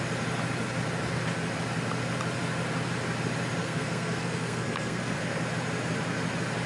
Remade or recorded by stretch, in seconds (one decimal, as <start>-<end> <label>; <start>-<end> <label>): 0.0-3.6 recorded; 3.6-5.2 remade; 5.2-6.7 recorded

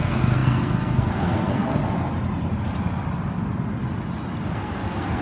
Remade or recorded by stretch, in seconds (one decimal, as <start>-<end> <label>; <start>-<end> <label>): 0.0-1.8 remade; 1.8-4.5 recorded; 4.5-5.2 remade

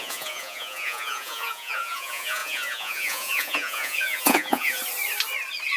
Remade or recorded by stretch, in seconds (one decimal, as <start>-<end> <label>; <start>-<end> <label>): 0.0-4.8 remade; 4.8-5.8 recorded

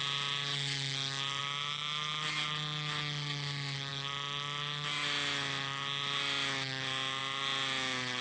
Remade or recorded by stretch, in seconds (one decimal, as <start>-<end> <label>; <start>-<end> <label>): 0.0-8.2 recorded

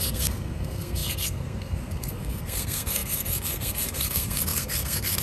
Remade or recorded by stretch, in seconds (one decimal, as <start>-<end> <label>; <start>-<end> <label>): 0.0-5.2 remade

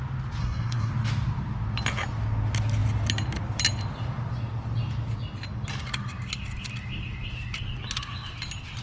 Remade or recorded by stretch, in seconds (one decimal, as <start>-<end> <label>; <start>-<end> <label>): 0.0-0.4 recorded; 0.4-0.9 remade; 0.9-8.8 recorded